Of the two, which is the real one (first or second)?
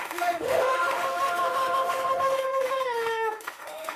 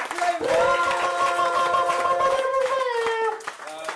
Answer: second